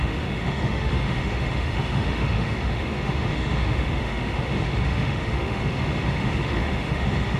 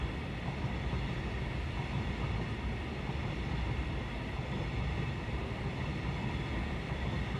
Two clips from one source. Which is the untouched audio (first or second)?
second